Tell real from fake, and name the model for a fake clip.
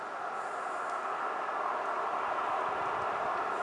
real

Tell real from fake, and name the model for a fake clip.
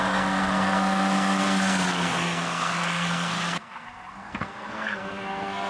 fake, codec, SNAC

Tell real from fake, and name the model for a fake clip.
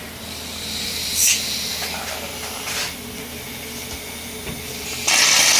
real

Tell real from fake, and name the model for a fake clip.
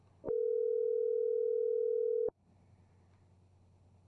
real